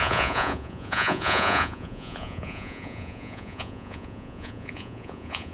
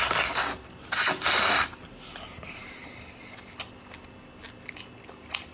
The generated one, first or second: first